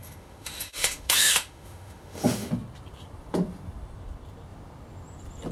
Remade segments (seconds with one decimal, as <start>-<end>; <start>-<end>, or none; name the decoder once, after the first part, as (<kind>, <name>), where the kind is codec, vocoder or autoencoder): 0.0-2.5 (autoencoder, DAC-VAE)